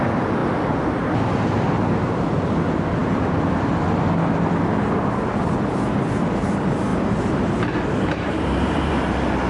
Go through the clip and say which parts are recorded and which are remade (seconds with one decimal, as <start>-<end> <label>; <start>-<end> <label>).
0.0-3.0 recorded; 3.0-3.7 remade; 3.7-6.9 recorded; 6.9-8.9 remade; 8.9-9.5 recorded